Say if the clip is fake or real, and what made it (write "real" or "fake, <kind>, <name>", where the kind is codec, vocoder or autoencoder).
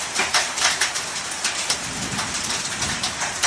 fake, vocoder, BigVGAN v2